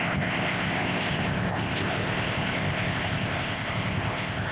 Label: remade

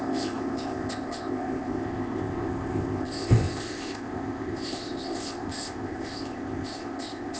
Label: remade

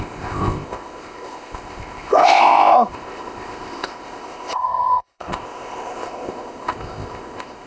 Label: remade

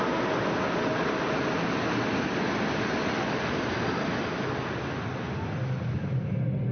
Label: recorded